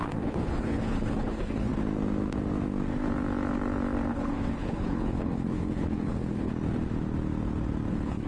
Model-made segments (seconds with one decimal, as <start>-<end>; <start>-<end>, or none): 0.0-1.7; 4.1-6.5; 7.9-8.3